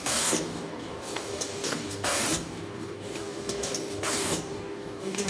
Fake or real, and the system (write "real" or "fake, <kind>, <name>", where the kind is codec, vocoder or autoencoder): fake, codec, DAC